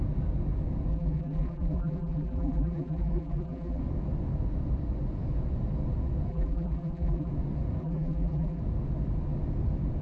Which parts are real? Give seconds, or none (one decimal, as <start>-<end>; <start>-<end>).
0.0-0.9; 3.8-6.3; 7.3-7.8; 8.6-10.0